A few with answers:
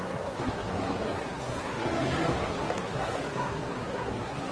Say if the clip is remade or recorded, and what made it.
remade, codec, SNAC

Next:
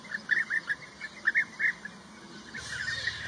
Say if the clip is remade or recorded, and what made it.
recorded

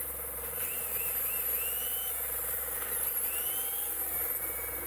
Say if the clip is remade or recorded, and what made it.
recorded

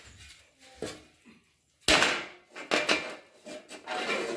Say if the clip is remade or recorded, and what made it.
recorded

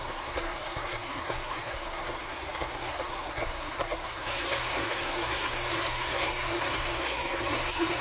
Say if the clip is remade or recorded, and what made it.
remade, codec, SNAC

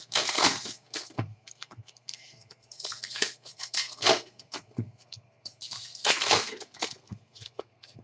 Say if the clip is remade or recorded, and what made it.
remade, codec, SNAC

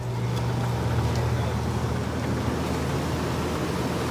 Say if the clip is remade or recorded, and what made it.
recorded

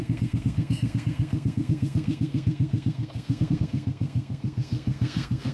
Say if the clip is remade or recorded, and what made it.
remade, codec, SNAC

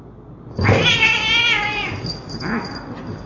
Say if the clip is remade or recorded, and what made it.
recorded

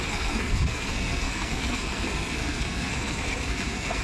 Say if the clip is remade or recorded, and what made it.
remade, codec, SNAC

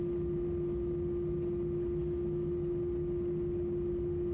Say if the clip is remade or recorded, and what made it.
recorded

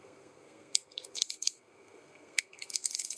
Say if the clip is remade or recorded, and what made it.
remade, codec, SNAC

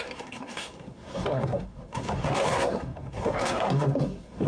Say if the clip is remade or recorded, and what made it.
remade, codec, SNAC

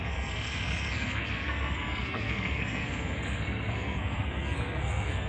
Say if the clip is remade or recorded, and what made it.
remade, codec, SNAC